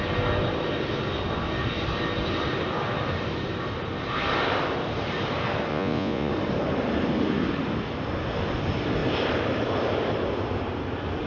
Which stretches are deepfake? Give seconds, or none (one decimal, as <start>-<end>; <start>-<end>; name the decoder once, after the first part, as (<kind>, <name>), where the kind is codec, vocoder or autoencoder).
5.7-6.3 (vocoder, Vocos)